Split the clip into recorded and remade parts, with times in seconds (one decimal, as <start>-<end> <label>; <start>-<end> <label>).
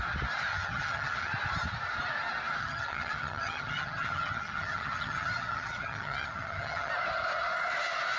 0.0-0.5 recorded; 0.5-1.3 remade; 1.3-2.6 recorded; 2.6-6.9 remade; 6.9-8.2 recorded